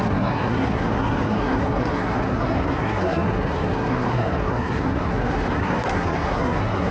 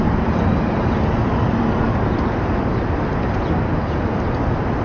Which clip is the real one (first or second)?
second